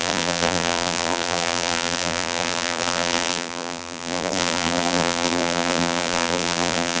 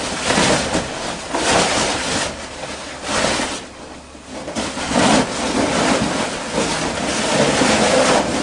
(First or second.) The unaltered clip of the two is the second